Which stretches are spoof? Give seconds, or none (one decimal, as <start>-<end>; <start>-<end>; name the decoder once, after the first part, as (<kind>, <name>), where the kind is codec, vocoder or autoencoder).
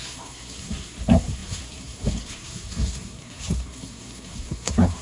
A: 0.0-5.0 (codec, SNAC)